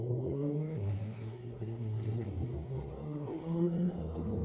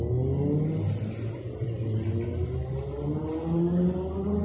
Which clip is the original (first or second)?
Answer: second